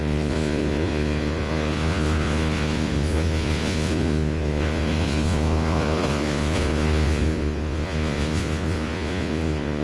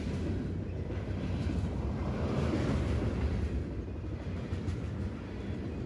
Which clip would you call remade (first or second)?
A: first